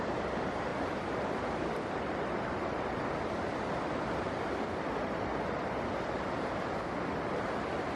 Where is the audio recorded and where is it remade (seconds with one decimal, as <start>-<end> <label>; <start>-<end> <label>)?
0.0-0.7 recorded; 0.7-4.3 remade; 4.3-8.0 recorded